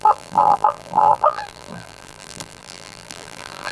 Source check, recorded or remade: remade